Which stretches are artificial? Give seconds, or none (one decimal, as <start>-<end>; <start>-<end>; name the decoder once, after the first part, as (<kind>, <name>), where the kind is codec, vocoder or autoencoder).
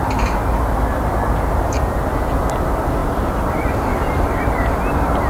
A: 3.0-4.2 (vocoder, BigVGAN v2)